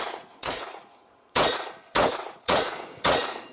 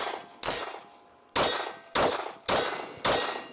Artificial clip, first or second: first